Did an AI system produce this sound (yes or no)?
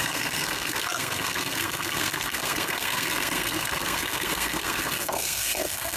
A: yes